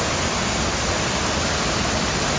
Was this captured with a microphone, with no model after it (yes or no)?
yes